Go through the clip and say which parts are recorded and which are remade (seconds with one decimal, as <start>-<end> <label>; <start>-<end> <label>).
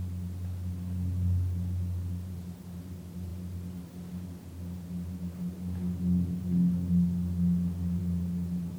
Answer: 0.0-8.8 recorded